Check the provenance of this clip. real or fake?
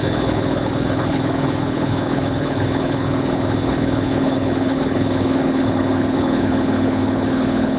fake